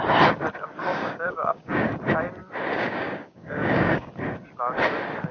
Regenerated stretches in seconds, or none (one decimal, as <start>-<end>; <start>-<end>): 0.9-1.9; 2.7-4.1